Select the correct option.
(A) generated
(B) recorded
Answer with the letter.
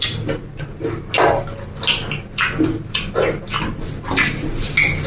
B